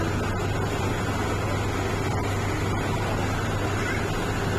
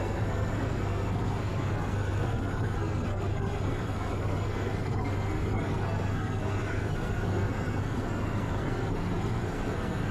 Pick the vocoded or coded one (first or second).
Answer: second